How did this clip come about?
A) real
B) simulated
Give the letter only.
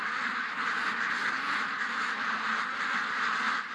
B